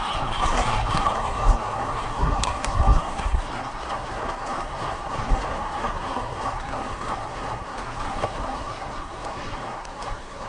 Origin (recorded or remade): remade